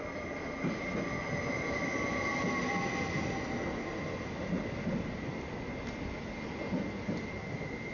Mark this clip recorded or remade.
recorded